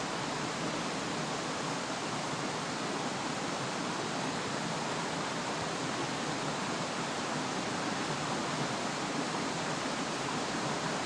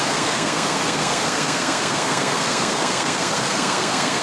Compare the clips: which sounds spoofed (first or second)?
second